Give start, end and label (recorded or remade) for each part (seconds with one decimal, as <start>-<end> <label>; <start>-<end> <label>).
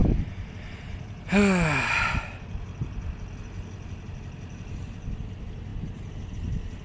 0.0-6.8 recorded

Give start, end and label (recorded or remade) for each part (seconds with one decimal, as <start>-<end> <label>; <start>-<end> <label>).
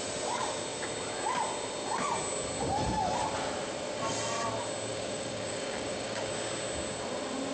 0.0-4.9 recorded; 4.9-6.3 remade; 6.3-7.5 recorded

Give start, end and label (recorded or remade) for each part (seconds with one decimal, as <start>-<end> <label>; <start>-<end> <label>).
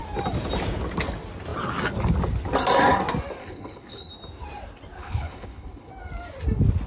0.0-3.4 recorded; 3.4-4.1 remade; 4.1-5.0 recorded; 5.0-5.9 remade; 5.9-6.9 recorded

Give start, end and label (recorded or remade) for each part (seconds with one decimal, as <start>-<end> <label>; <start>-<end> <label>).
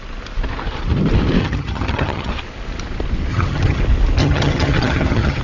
0.0-1.4 recorded; 1.4-2.3 remade; 2.3-3.3 recorded; 3.3-3.8 remade; 3.8-4.2 recorded; 4.2-5.4 remade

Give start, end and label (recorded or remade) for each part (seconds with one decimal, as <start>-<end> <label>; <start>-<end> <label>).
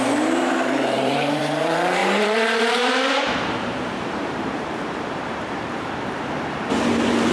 0.0-7.3 remade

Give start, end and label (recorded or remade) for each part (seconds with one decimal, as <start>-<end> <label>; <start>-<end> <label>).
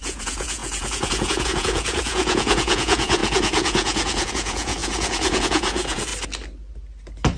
0.0-6.1 remade; 6.1-7.4 recorded